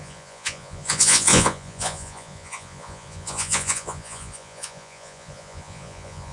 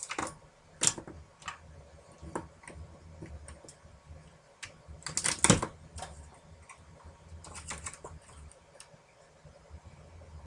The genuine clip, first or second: second